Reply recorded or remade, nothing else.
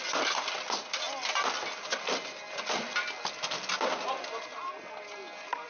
recorded